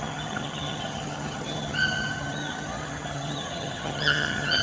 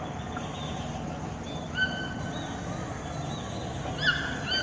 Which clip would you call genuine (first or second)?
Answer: second